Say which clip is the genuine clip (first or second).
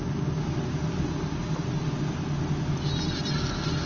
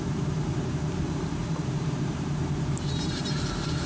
first